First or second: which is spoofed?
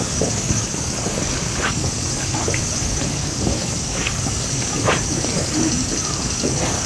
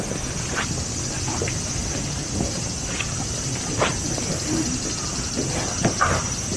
first